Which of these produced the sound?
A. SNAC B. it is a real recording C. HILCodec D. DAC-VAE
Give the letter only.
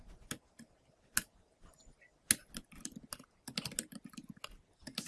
B